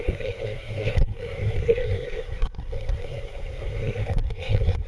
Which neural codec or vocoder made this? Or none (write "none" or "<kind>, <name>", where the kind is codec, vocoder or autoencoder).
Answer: codec, SNAC